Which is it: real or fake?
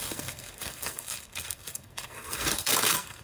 fake